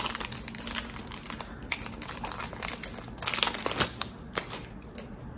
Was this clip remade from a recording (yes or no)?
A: no